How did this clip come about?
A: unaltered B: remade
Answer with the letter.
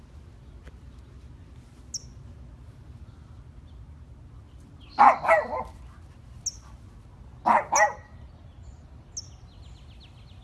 A